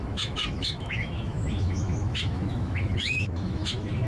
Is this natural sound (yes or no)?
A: no